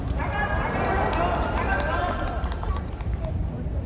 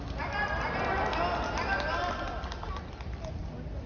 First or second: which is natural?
second